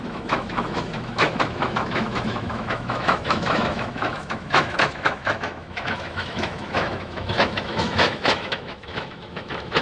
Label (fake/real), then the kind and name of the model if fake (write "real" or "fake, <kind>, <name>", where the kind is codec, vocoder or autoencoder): fake, autoencoder, DAC-VAE